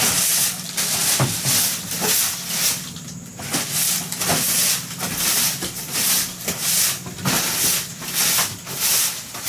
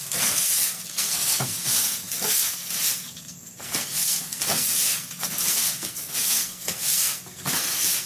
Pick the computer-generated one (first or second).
second